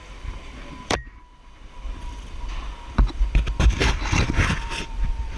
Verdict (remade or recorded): remade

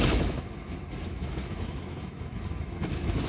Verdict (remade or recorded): remade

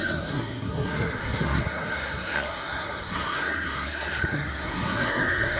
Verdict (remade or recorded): remade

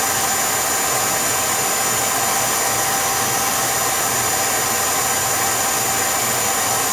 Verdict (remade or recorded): recorded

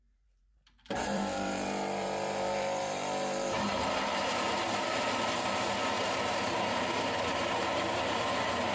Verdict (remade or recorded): remade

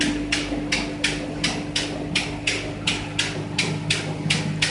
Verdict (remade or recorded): recorded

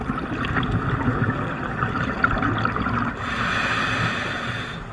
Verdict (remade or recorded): recorded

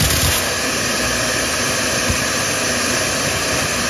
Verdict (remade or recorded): remade